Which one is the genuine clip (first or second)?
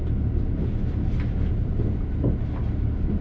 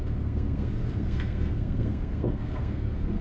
first